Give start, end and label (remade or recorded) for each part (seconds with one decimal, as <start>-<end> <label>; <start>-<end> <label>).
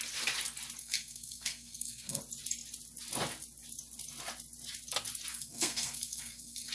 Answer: 0.0-0.8 recorded; 0.8-2.2 remade; 2.2-5.3 recorded; 5.3-6.7 remade